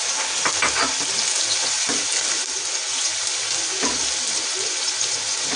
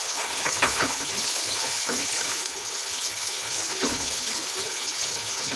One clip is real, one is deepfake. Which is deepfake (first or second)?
second